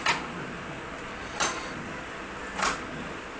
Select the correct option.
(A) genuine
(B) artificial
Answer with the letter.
A